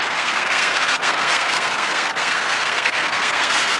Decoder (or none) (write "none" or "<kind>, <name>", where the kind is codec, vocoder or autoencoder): codec, SNAC